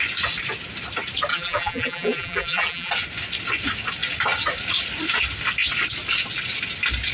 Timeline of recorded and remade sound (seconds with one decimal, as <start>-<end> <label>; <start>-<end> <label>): 0.0-1.3 recorded; 1.3-2.9 remade; 2.9-7.1 recorded